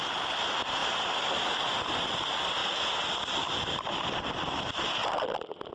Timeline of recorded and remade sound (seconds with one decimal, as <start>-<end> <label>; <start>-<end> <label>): 0.0-0.8 recorded; 0.8-1.3 remade; 1.3-2.6 recorded; 2.6-3.1 remade; 3.1-5.0 recorded; 5.0-5.7 remade